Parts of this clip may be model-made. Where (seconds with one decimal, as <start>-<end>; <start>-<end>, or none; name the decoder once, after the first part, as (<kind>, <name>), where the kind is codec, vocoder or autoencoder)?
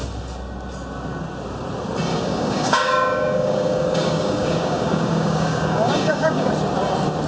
2.1-6.5 (codec, DAC)